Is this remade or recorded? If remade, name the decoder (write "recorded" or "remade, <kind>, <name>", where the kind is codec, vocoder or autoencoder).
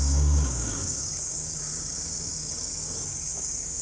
remade, codec, DAC